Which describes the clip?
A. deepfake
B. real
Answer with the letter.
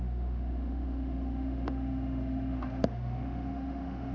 A